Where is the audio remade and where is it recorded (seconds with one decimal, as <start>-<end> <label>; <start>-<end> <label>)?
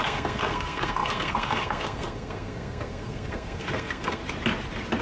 0.0-4.2 remade; 4.2-5.0 recorded